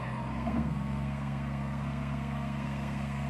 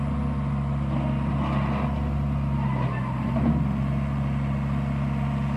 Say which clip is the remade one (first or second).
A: first